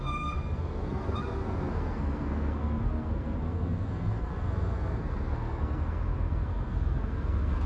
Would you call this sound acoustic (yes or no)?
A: no